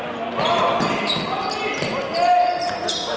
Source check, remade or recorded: recorded